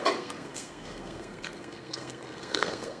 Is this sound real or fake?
fake